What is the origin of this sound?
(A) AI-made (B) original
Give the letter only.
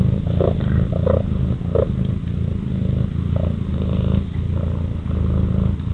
B